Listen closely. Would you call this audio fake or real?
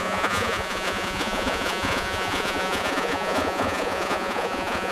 fake